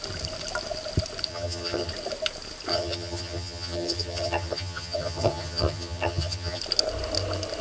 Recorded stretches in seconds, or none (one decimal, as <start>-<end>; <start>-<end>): 0.0-1.3; 1.9-2.7; 6.6-7.6